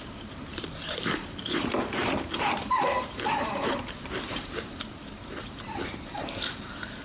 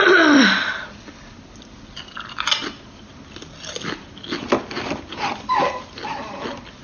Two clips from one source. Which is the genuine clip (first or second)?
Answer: second